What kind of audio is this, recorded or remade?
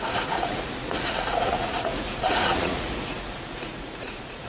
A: remade